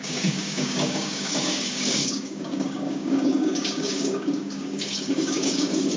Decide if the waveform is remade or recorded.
remade